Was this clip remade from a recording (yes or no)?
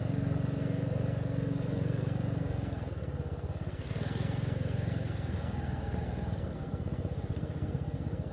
yes